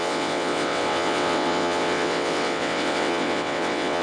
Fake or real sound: fake